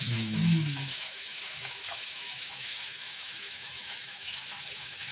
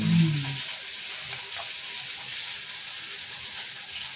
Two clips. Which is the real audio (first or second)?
second